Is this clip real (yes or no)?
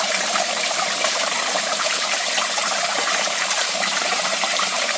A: no